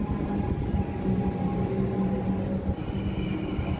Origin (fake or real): real